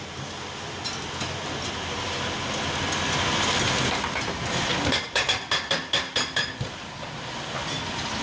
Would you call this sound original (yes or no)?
yes